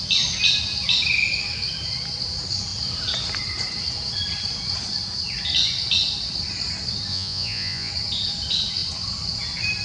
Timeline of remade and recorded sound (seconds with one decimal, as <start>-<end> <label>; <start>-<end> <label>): 0.0-7.1 recorded; 7.1-7.9 remade; 7.9-9.8 recorded